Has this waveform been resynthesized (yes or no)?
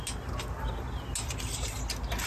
no